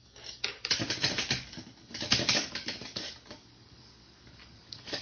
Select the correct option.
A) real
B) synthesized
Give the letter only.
B